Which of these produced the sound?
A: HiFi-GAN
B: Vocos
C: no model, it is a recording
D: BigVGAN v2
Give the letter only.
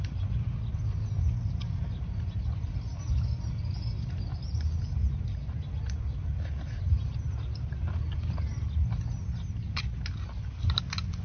C